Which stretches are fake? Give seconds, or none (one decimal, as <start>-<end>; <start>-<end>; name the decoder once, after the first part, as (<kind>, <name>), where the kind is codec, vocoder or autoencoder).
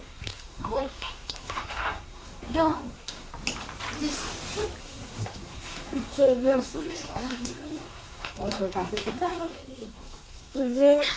0.0-3.3 (codec, SNAC); 4.8-11.2